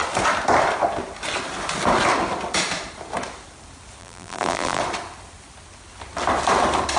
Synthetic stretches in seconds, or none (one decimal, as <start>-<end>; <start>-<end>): 4.0-4.8